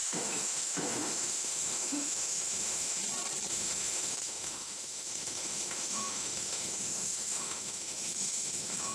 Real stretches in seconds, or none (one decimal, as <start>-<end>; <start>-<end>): 3.0-3.5